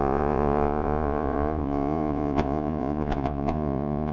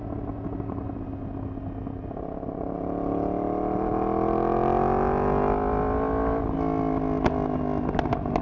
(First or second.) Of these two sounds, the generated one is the first